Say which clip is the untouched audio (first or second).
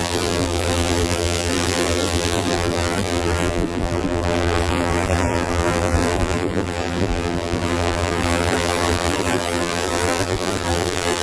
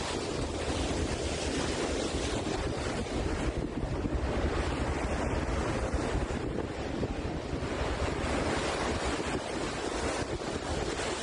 second